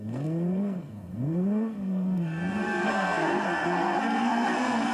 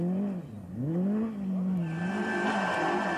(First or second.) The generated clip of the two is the first